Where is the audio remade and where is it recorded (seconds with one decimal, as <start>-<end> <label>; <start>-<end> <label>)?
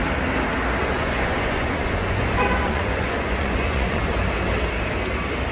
0.0-0.8 recorded; 0.8-4.1 remade; 4.1-5.5 recorded